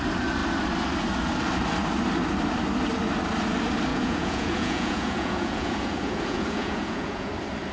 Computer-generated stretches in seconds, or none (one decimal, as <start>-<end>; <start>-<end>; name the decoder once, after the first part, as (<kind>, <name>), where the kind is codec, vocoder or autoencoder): 3.9-7.3 (vocoder, Vocos)